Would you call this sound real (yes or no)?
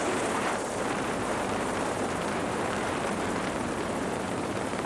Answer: no